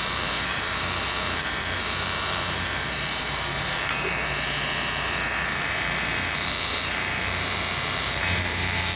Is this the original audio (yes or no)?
no